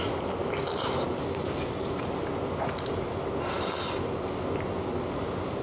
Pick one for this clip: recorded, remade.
recorded